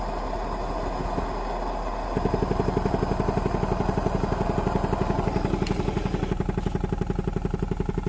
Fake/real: real